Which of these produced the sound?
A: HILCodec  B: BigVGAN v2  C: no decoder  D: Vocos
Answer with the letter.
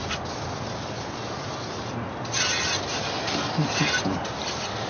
C